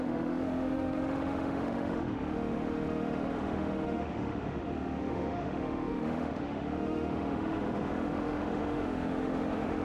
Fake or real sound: fake